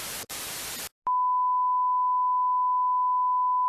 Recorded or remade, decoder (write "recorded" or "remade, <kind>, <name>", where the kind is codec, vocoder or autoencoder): recorded